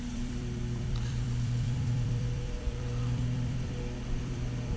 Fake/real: fake